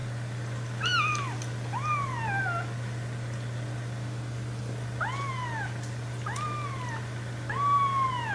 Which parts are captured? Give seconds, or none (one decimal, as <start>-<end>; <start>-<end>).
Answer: 0.0-8.3